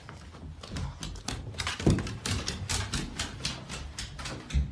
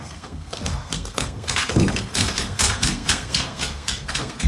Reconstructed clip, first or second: second